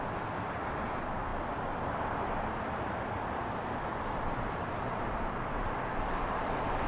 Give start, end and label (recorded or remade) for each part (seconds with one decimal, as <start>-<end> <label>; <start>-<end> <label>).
0.0-6.9 recorded